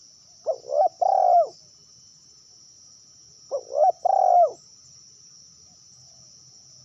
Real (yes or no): yes